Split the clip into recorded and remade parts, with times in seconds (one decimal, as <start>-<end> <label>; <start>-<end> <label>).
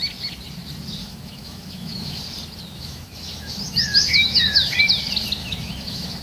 0.0-1.0 recorded; 1.0-2.2 remade; 2.2-2.7 recorded; 2.7-4.8 remade; 4.8-5.4 recorded; 5.4-6.2 remade